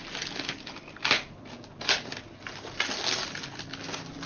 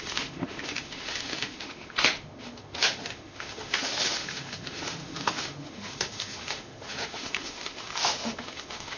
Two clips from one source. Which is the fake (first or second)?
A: second